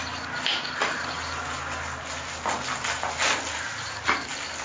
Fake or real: real